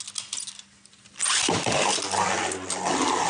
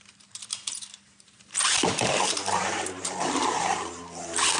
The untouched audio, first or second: first